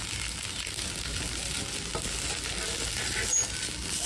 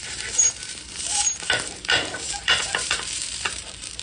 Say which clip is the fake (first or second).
second